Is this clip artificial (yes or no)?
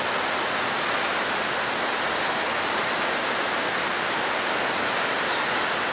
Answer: no